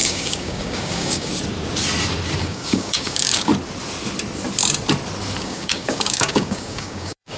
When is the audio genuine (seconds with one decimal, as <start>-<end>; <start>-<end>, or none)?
1.3-2.4; 3.5-5.4